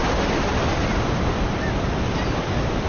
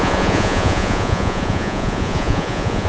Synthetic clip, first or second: second